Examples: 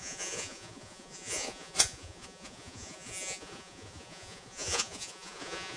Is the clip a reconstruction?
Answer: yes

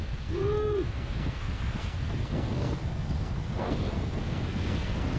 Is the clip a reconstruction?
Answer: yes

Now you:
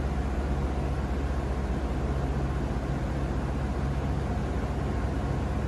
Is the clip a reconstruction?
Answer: no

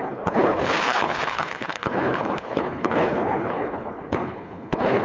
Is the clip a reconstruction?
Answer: yes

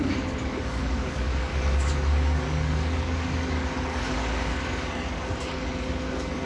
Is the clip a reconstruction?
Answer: yes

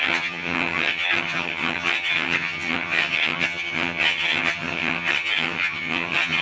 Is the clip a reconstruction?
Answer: yes